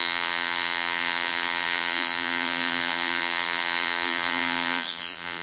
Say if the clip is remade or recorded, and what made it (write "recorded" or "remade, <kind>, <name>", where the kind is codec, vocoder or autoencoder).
remade, vocoder, BigVGAN v2